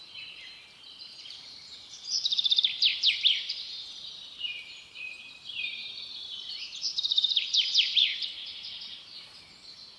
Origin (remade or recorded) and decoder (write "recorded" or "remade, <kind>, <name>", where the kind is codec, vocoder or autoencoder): remade, vocoder, BigVGAN v2